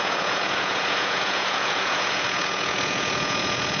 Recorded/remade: remade